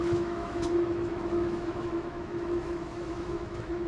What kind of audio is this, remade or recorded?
remade